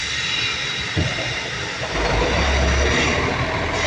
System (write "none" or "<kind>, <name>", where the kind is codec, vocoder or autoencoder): none